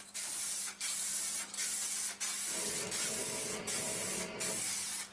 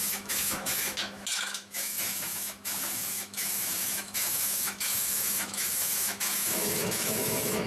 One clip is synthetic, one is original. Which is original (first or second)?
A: first